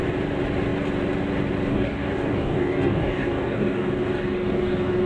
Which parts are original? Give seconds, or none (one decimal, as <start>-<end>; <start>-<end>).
0.0-1.7